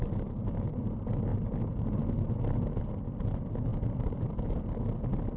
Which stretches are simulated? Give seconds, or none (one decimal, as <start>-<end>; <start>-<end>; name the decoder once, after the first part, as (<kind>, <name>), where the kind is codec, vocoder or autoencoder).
3.7-4.5 (vocoder, BigVGAN v2)